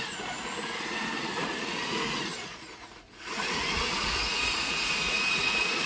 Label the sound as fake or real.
fake